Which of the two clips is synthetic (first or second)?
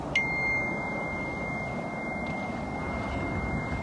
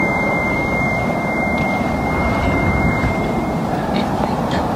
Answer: second